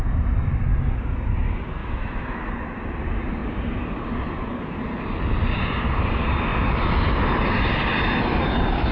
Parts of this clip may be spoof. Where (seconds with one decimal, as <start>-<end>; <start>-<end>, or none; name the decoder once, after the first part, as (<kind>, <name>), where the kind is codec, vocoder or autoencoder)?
1.8-2.5 (autoencoder, DAC-VAE)